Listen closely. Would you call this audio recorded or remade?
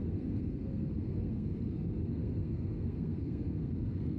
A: remade